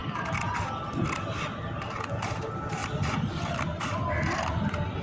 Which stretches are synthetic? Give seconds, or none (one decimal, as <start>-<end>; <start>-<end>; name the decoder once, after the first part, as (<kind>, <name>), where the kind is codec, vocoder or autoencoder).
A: none